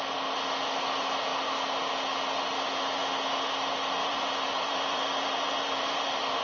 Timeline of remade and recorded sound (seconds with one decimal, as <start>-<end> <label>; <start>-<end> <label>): 0.0-4.0 recorded; 4.0-6.4 remade